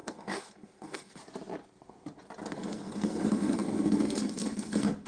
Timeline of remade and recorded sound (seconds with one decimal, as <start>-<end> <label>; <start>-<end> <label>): 0.0-1.2 remade; 1.2-2.4 recorded; 2.4-5.1 remade